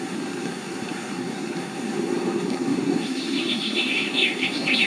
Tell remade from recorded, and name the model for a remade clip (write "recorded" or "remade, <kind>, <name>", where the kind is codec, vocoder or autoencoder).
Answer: remade, codec, SNAC